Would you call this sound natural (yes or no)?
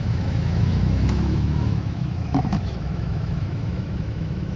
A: no